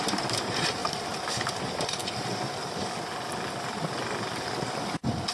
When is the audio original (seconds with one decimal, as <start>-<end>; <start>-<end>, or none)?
0.8-1.5; 2.0-5.3